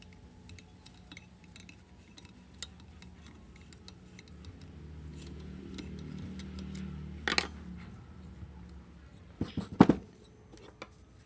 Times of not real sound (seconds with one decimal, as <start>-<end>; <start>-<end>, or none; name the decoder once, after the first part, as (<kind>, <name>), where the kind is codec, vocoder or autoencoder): 5.1-5.6 (vocoder, Vocos)